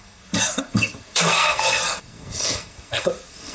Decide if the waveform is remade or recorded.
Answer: remade